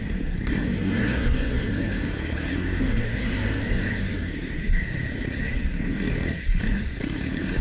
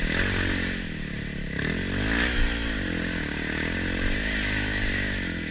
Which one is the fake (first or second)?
first